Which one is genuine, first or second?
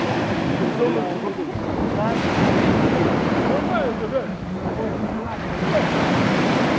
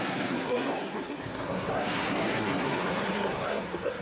first